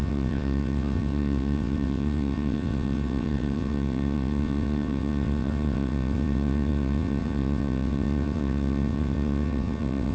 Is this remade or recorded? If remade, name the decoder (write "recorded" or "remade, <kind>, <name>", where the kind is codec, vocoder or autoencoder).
remade, vocoder, WaveNeXt